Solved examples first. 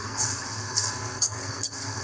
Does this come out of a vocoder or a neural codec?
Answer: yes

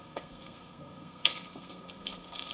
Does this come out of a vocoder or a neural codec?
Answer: yes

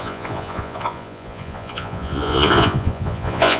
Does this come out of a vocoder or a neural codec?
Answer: yes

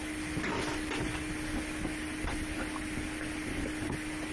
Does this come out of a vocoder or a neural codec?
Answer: no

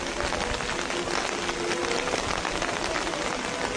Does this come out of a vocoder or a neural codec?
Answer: no